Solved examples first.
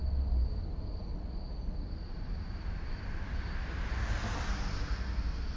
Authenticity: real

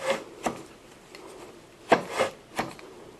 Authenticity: real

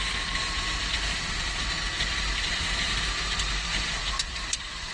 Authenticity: real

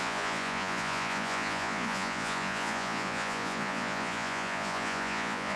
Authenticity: fake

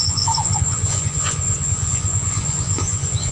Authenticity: fake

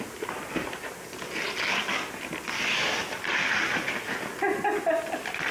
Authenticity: real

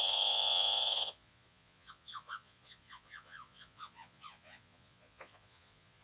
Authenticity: fake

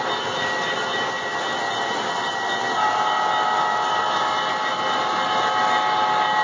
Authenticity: real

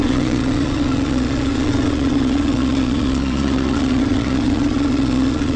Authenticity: fake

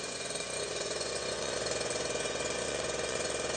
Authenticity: fake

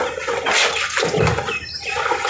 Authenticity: real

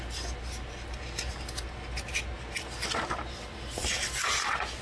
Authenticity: real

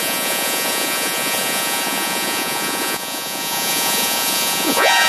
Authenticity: fake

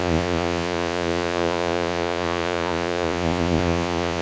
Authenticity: fake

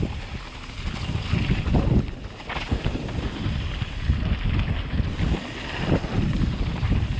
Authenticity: real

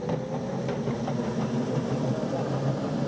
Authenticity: real